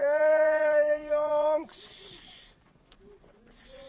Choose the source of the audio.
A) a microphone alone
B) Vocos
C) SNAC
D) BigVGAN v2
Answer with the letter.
B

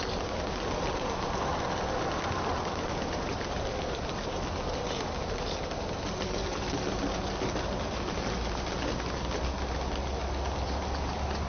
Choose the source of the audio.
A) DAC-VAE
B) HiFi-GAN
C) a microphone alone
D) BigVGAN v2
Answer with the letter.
C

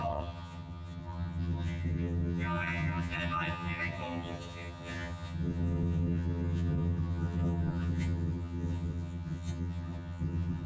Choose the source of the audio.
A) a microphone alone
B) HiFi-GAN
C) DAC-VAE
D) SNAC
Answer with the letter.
B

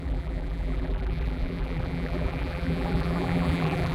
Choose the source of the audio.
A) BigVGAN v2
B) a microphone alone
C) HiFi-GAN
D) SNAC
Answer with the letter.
A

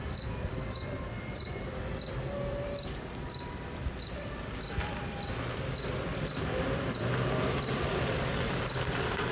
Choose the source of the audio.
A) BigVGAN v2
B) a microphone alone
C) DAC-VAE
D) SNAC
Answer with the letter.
A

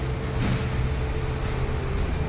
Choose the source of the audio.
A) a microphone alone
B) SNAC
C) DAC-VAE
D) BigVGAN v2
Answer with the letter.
A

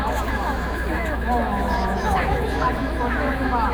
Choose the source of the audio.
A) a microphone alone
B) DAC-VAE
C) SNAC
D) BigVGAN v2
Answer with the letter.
B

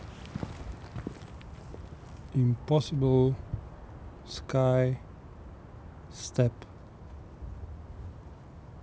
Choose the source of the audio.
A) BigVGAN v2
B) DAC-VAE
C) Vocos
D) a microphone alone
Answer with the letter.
D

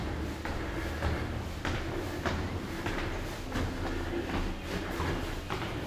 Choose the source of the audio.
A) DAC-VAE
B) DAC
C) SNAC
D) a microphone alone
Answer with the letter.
D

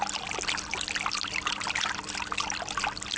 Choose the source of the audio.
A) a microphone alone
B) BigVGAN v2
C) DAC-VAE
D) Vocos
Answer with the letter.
A